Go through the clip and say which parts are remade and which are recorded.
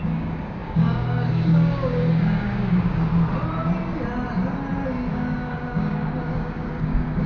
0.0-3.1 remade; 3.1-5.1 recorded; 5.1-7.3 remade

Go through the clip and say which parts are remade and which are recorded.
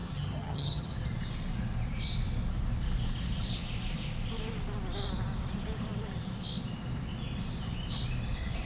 0.0-0.9 remade; 0.9-8.7 recorded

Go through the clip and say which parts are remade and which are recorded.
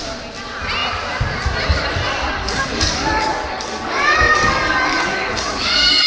0.0-2.4 recorded; 2.4-6.1 remade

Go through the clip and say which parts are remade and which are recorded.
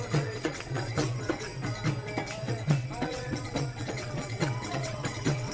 0.0-1.5 remade; 1.5-2.4 recorded; 2.4-5.5 remade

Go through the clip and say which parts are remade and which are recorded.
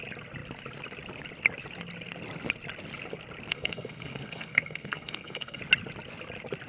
0.0-3.5 recorded; 3.5-5.6 remade; 5.6-6.7 recorded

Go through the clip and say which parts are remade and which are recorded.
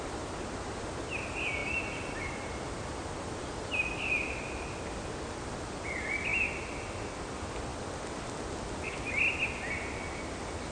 0.0-10.7 recorded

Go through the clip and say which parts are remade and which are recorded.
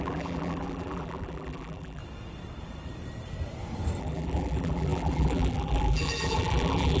0.0-2.0 remade; 2.0-4.0 recorded; 4.0-7.0 remade